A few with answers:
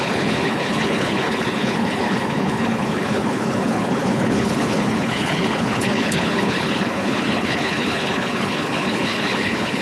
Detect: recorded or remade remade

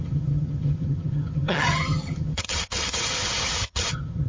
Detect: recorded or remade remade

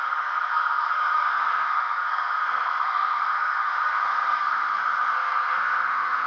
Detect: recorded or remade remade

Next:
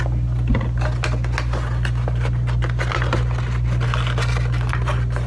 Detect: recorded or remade recorded